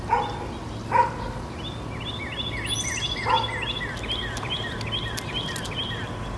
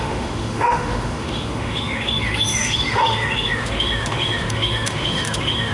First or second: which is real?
first